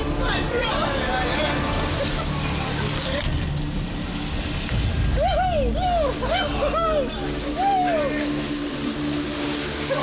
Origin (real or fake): real